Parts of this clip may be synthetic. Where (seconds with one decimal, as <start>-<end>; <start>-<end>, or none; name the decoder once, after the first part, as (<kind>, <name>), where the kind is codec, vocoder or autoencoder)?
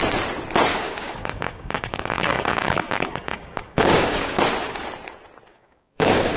0.7-4.4 (codec, DAC); 5.5-6.4